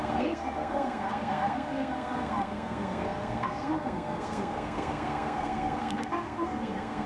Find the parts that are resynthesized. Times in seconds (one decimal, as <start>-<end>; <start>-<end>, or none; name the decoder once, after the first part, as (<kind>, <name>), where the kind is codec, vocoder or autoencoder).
0.0-7.1 (codec, SNAC)